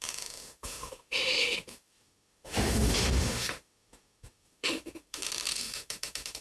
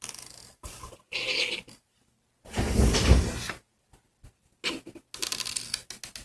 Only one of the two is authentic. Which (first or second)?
second